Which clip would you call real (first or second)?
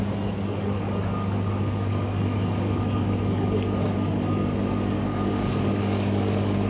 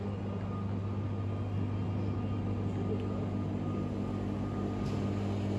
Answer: second